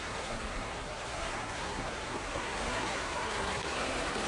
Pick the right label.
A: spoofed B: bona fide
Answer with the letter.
A